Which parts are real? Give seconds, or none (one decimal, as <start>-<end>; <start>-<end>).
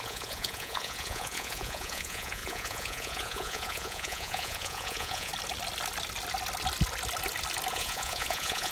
5.3-7.7